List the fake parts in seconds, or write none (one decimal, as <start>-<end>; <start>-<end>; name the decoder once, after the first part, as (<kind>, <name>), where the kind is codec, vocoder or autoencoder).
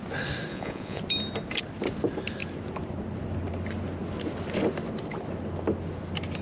0.5-1.0 (vocoder, Vocos)